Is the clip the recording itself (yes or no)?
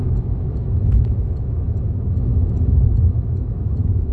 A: no